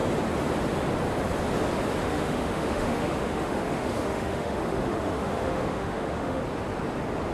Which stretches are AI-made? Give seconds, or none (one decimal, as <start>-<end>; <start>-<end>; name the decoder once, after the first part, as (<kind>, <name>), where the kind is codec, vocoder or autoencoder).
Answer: 2.0-6.4 (autoencoder, DAC-VAE)